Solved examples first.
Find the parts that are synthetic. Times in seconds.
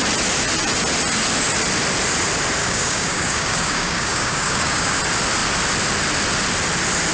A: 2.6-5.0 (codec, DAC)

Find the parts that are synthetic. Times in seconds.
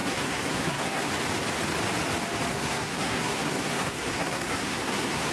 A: 0.0-1.1 (codec, SNAC); 2.5-5.3